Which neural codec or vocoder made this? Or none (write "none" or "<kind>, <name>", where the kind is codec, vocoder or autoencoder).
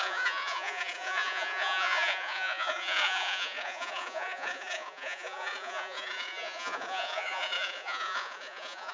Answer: vocoder, Vocos